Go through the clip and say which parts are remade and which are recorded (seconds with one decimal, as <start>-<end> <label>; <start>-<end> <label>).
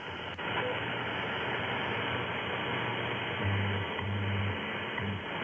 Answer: 0.0-5.4 recorded